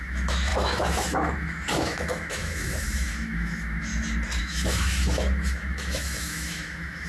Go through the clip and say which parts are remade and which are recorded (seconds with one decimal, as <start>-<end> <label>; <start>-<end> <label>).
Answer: 0.0-3.9 remade; 3.9-4.4 recorded; 4.4-7.1 remade

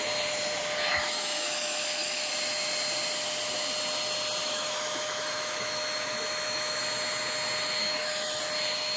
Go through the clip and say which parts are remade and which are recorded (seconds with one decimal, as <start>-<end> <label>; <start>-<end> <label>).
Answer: 0.0-0.9 recorded; 0.9-2.3 remade; 2.3-4.4 recorded; 4.4-6.8 remade; 6.8-7.8 recorded; 7.8-8.4 remade; 8.4-9.0 recorded

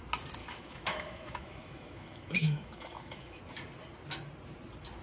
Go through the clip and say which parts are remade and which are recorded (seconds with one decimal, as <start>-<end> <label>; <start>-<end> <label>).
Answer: 0.0-0.4 recorded; 0.4-3.4 remade; 3.4-5.0 recorded

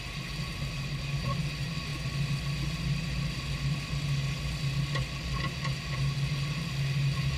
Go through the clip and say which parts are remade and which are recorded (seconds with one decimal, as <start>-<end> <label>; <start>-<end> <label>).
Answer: 0.0-7.4 recorded

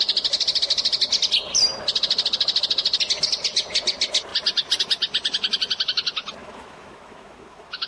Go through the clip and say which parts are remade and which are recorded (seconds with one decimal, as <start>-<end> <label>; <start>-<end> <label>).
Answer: 0.0-6.4 recorded; 6.4-7.9 remade

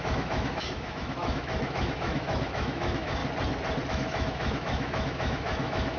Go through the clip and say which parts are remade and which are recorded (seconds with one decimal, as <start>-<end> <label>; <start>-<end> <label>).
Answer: 0.0-3.2 remade; 3.2-3.9 recorded; 3.9-6.0 remade

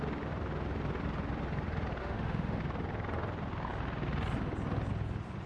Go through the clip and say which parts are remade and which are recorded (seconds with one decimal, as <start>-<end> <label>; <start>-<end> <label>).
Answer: 0.0-2.0 recorded; 2.0-2.6 remade; 2.6-5.5 recorded